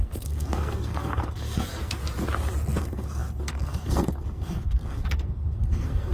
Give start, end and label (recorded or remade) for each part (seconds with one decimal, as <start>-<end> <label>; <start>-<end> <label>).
0.0-2.0 remade; 2.0-2.8 recorded; 2.8-6.1 remade